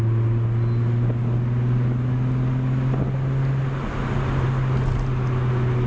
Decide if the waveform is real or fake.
real